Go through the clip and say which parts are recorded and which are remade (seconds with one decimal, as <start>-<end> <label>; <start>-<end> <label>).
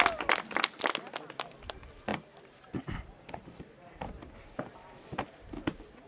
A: 0.0-2.1 recorded; 2.1-6.1 remade